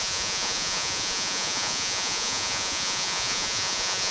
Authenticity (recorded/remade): remade